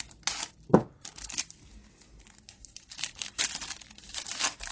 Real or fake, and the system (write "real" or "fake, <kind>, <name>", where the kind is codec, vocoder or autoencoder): real